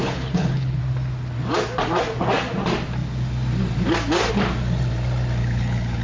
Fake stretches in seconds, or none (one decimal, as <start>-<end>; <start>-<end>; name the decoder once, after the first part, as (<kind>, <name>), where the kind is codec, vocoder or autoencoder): 0.0-0.8 (codec, HILCodec); 5.4-6.0